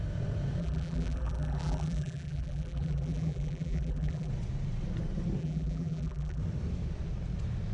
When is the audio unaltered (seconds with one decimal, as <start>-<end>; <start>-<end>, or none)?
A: 0.0-0.6; 4.3-5.4; 6.4-7.7